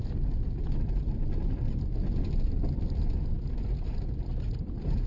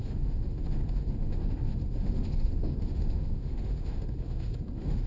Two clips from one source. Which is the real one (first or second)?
first